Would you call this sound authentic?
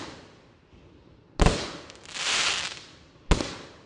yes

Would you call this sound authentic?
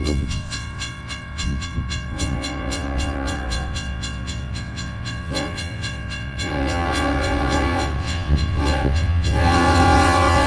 no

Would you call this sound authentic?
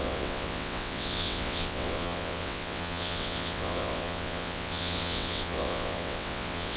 no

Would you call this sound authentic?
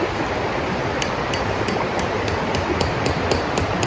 yes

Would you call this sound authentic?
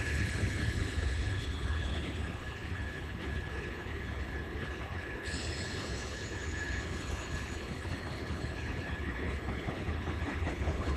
no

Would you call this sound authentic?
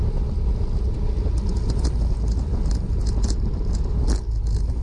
yes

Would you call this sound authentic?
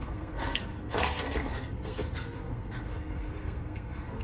no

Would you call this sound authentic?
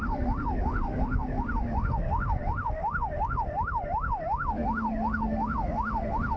no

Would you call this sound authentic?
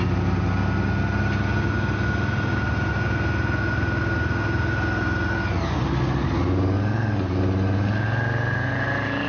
yes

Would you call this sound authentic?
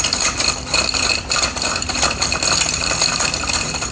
yes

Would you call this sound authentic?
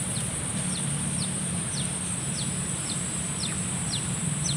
no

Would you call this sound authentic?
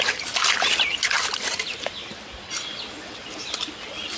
yes